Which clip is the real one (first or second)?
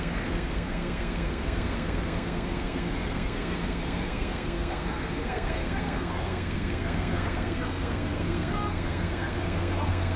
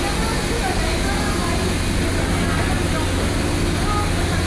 second